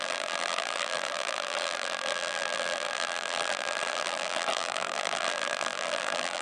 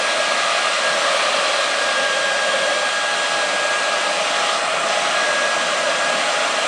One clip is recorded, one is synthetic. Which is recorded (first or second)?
second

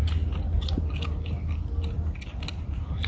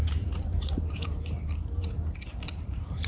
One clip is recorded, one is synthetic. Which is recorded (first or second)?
first